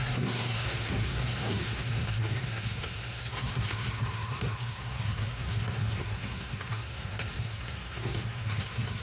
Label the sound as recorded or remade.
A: remade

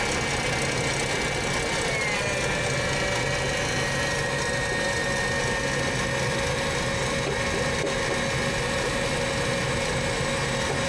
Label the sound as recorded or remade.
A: recorded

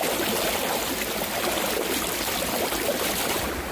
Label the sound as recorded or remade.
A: recorded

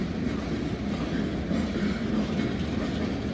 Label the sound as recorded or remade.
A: recorded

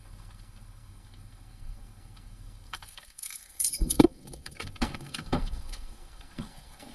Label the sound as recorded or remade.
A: remade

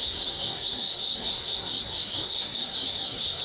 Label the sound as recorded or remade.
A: remade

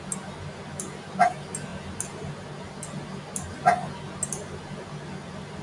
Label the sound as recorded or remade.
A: recorded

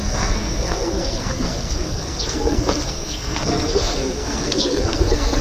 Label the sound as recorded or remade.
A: remade